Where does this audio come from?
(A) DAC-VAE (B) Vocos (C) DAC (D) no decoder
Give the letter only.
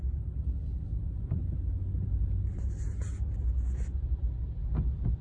D